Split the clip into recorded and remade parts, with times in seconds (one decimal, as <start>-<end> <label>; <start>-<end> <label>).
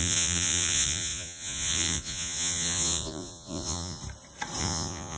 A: 0.0-4.0 remade; 4.0-4.6 recorded; 4.6-5.2 remade